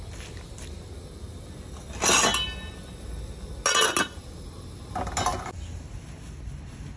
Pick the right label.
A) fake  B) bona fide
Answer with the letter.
B